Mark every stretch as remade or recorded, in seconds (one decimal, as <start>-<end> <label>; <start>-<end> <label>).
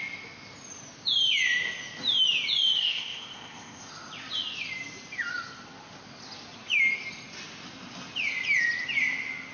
0.0-2.8 recorded; 2.8-3.9 remade; 3.9-9.5 recorded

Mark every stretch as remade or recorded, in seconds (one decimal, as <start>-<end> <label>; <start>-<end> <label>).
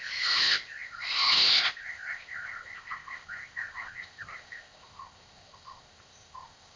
0.0-6.8 remade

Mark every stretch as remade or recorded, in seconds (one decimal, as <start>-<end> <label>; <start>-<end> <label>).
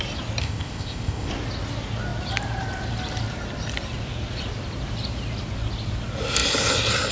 0.0-0.4 recorded; 0.4-1.3 remade; 1.3-7.1 recorded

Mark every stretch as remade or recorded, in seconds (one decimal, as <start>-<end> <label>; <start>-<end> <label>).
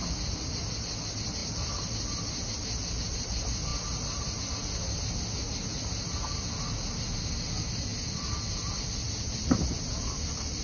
0.0-10.6 recorded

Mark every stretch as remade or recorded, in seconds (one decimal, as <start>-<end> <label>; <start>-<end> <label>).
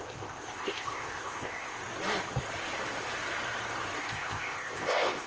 0.0-1.8 remade; 1.8-4.0 recorded; 4.0-5.3 remade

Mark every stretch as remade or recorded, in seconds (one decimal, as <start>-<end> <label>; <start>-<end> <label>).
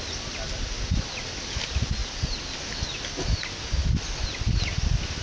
0.0-5.2 recorded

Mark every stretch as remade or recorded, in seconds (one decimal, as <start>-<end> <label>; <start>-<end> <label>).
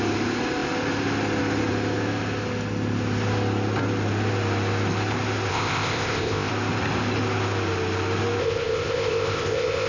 0.0-5.5 recorded; 5.5-6.5 remade; 6.5-8.4 recorded; 8.4-9.9 remade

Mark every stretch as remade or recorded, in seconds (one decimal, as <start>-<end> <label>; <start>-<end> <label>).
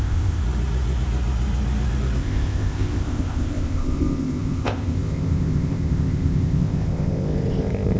0.0-0.4 remade; 0.4-2.2 recorded; 2.2-8.0 remade